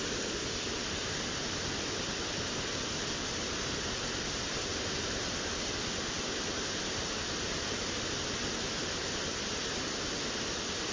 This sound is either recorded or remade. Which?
recorded